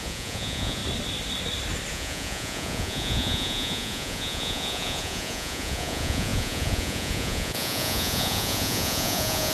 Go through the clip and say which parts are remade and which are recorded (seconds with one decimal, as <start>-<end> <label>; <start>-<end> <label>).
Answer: 0.0-0.8 remade; 0.8-1.9 recorded; 1.9-9.5 remade